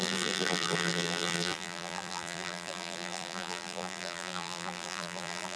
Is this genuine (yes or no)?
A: no